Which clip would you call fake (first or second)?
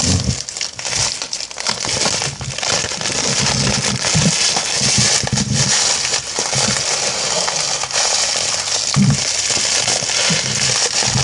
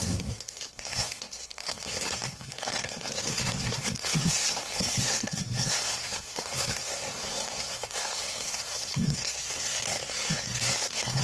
second